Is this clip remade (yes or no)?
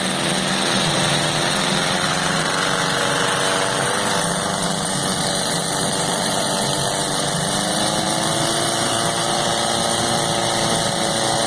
no